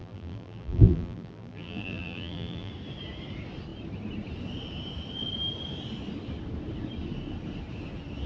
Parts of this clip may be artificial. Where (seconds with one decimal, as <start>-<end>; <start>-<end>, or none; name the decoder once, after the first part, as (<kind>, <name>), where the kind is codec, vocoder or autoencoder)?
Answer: 0.0-2.7 (vocoder, BigVGAN v2)